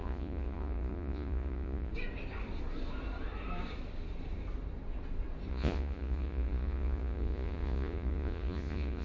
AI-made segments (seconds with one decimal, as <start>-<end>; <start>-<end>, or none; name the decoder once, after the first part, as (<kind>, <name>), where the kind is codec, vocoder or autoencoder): 0.0-1.9 (vocoder, Vocos); 5.5-9.0